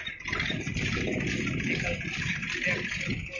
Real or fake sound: fake